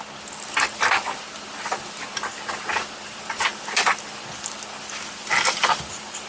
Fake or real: real